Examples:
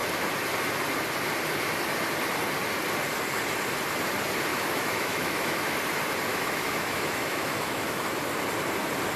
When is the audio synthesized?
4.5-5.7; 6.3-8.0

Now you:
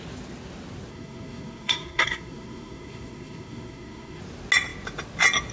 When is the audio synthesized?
0.9-4.2

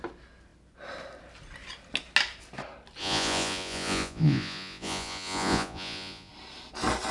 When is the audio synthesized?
3.0-6.3

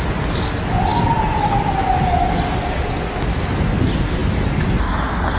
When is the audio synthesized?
none

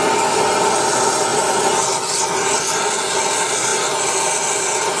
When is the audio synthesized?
none

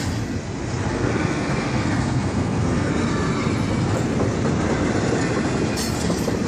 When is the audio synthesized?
0.9-2.9

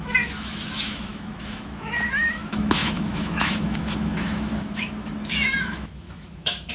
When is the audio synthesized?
0.0-6.7